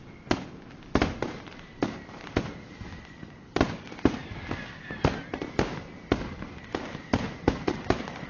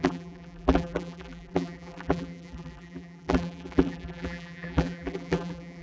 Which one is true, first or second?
first